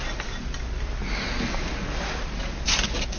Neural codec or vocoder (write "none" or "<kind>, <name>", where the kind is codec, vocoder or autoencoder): none